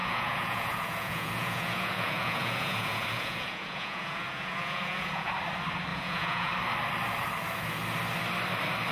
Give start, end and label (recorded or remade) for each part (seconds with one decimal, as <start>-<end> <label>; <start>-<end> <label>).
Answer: 0.0-5.3 remade; 5.3-5.9 recorded; 5.9-6.5 remade; 6.5-8.9 recorded